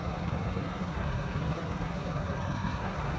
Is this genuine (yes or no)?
no